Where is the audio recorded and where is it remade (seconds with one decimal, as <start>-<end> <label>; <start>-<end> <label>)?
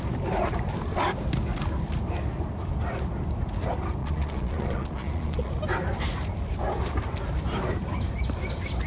0.0-4.0 recorded; 4.0-5.5 remade; 5.5-8.9 recorded